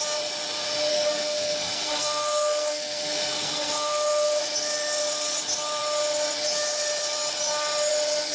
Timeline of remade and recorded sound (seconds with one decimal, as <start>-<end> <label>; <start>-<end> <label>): 0.0-0.9 recorded; 0.9-4.4 remade; 4.4-8.3 recorded